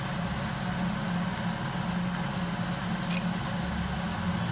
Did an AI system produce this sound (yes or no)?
no